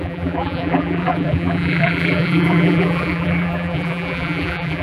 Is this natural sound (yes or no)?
no